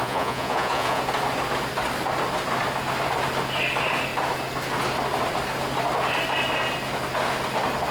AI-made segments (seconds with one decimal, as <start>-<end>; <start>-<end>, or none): 0.0-1.0